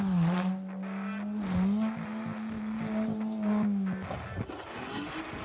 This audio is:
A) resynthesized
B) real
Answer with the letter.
B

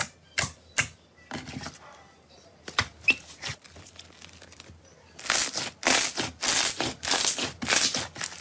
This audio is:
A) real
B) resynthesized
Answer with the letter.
A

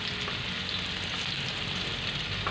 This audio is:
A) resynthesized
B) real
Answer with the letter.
B